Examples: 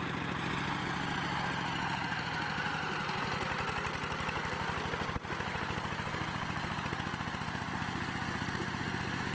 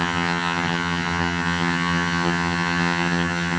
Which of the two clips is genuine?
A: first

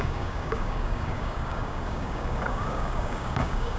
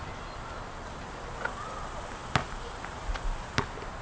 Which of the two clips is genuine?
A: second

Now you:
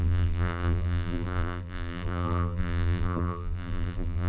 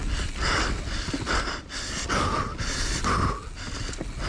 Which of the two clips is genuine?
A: second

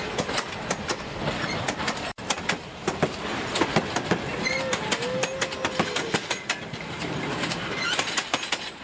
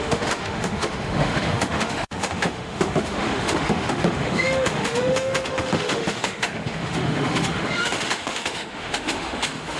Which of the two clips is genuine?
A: first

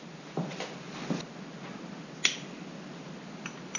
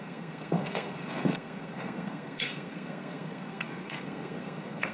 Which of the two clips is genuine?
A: first